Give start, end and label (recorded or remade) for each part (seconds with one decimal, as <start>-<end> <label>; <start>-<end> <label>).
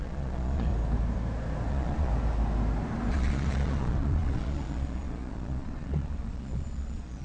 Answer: 0.0-0.7 remade; 0.7-1.7 recorded; 1.7-2.1 remade; 2.1-3.1 recorded; 3.1-7.2 remade